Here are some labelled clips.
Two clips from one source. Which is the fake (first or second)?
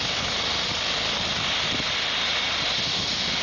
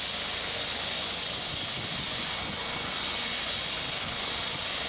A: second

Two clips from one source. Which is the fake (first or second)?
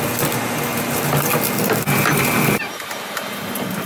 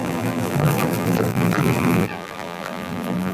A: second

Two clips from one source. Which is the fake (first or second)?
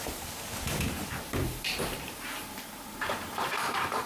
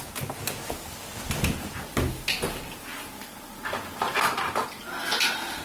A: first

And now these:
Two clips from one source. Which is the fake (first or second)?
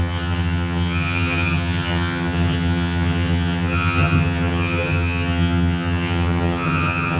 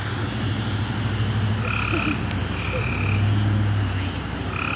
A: first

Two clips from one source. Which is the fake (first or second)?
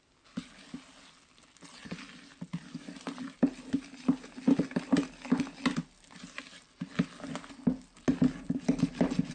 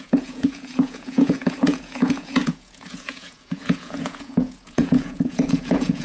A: second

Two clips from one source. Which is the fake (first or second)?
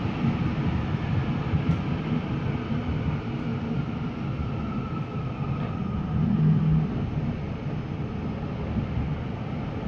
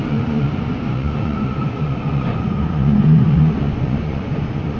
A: second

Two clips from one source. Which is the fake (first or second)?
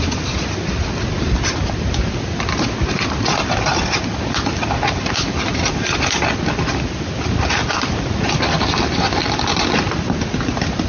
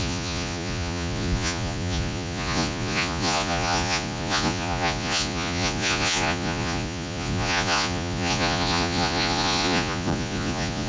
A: second